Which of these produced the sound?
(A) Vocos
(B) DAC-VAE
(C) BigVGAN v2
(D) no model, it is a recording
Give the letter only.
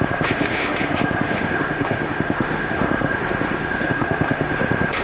B